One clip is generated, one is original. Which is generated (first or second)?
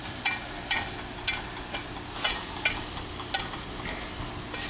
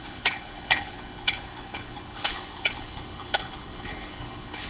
second